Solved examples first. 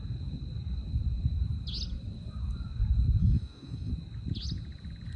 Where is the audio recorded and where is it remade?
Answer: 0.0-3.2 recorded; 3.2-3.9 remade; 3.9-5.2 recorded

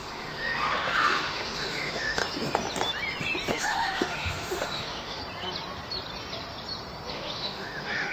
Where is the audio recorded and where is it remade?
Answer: 0.0-2.2 remade; 2.2-3.5 recorded; 3.5-5.2 remade; 5.2-7.1 recorded; 7.1-8.1 remade

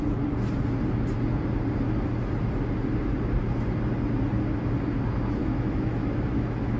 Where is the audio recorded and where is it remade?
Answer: 0.0-5.4 recorded; 5.4-6.8 remade

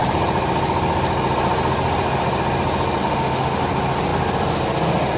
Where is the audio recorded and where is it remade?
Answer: 0.0-3.0 recorded; 3.0-3.6 remade; 3.6-5.2 recorded

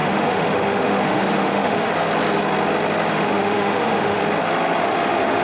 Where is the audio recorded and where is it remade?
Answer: 0.0-1.9 remade; 1.9-3.1 recorded; 3.1-4.2 remade; 4.2-4.8 recorded; 4.8-5.4 remade

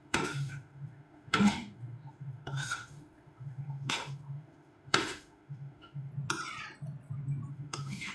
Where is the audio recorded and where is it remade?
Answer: 0.0-6.1 remade; 6.1-7.5 recorded; 7.5-8.1 remade